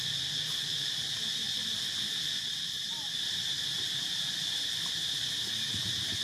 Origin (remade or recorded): recorded